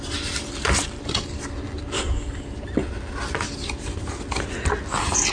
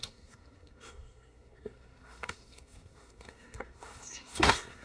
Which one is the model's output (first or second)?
second